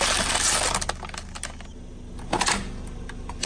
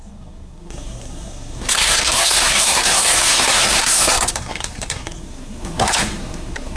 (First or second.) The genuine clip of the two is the first